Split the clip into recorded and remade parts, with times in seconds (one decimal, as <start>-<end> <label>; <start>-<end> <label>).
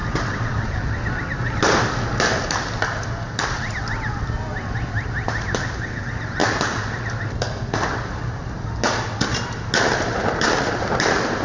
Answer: 0.0-11.4 recorded